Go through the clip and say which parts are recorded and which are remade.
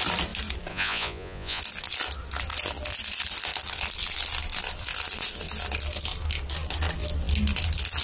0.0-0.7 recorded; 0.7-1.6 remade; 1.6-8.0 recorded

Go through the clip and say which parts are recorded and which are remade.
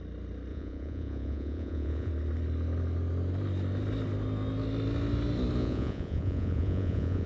0.0-0.5 recorded; 0.5-2.1 remade; 2.1-5.6 recorded; 5.6-7.3 remade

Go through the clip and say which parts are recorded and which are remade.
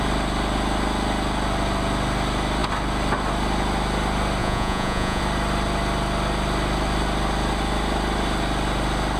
0.0-4.4 recorded; 4.4-5.2 remade; 5.2-9.2 recorded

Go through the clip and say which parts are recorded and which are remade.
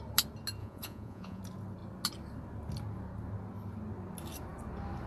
0.0-0.6 recorded; 0.6-1.4 remade; 1.4-5.1 recorded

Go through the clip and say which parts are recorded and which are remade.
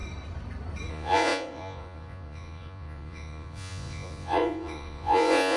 0.0-0.9 recorded; 0.9-5.6 remade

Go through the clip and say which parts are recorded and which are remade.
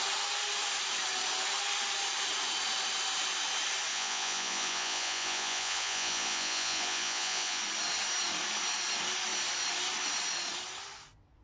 0.0-3.9 recorded; 3.9-7.6 remade; 7.6-11.4 recorded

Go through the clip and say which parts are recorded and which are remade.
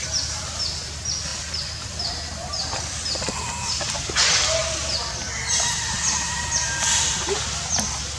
0.0-8.2 recorded